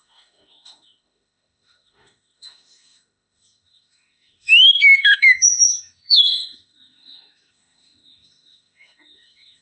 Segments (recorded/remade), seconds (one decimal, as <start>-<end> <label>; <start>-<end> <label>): 0.0-9.6 remade